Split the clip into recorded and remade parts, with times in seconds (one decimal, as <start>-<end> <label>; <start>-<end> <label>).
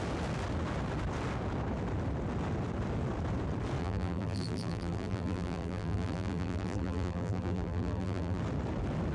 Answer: 0.0-3.8 recorded; 3.8-8.4 remade; 8.4-9.1 recorded